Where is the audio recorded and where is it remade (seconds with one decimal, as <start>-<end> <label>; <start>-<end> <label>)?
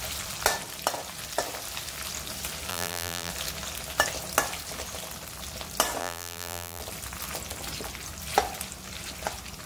0.0-2.7 recorded; 2.7-3.3 remade; 3.3-6.0 recorded; 6.0-6.8 remade; 6.8-9.7 recorded